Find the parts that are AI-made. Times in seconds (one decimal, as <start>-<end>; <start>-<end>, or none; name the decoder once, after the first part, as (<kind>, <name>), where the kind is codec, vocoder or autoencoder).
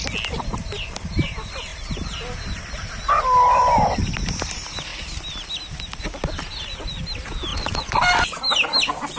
7.5-8.0 (vocoder, Vocos)